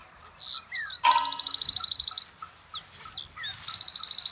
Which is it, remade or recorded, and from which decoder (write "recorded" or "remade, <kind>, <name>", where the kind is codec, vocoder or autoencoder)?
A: recorded